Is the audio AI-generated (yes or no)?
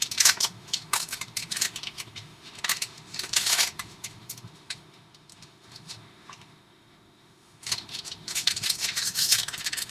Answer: yes